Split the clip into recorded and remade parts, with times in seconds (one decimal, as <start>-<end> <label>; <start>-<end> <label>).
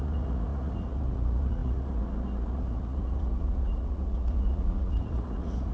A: 0.0-5.7 remade